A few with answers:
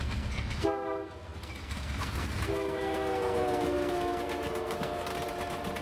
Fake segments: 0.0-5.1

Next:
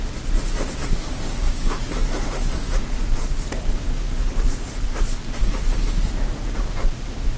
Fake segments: 0.8-5.0; 5.4-6.1

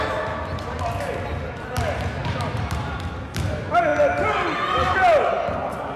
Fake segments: 2.2-3.2

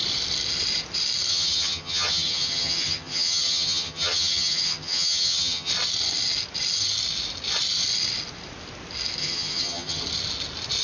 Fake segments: 1.3-5.7; 9.2-10.0

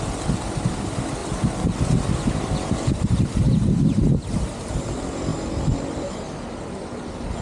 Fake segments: none

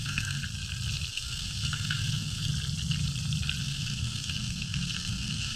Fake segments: 0.0-0.4; 1.1-2.5; 3.6-5.6